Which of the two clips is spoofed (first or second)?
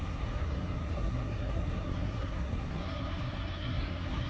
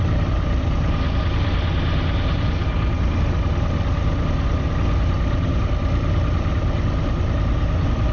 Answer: first